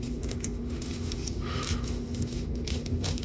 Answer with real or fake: fake